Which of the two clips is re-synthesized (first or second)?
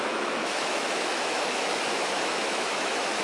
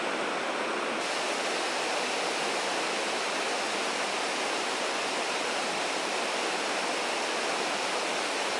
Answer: first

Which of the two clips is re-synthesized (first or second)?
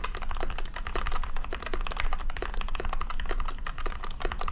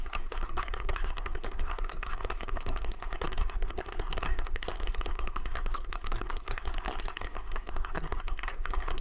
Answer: second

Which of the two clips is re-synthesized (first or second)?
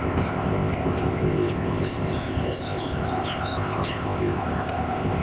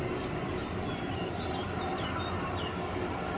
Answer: first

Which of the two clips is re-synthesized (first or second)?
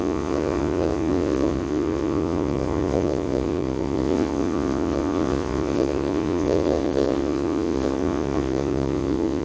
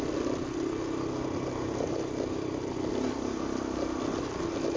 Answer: first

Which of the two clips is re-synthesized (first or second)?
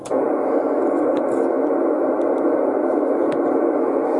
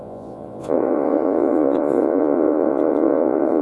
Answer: second